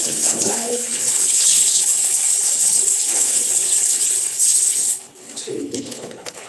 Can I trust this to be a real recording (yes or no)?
no